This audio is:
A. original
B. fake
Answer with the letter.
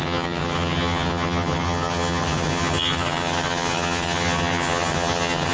B